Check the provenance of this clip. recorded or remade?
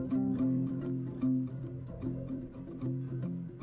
remade